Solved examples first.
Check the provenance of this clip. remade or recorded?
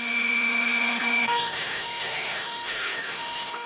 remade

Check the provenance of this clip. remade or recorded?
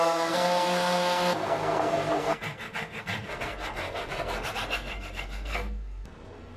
remade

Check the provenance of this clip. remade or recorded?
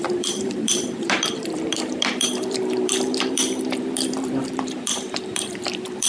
remade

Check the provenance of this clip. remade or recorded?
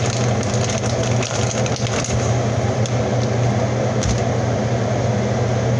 recorded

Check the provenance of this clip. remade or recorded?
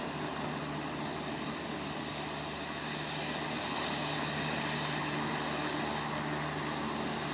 recorded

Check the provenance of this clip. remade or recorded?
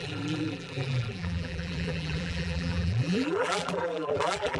remade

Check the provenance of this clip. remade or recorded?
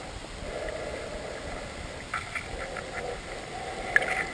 recorded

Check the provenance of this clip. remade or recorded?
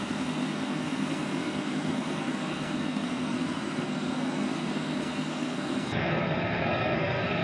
remade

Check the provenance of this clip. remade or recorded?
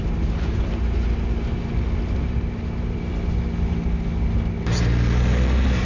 recorded